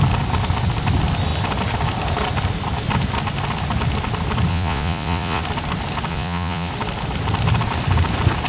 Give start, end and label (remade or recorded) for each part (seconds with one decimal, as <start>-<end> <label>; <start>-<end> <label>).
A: 0.0-4.5 recorded; 4.5-5.4 remade; 5.4-6.1 recorded; 6.1-6.7 remade; 6.7-8.5 recorded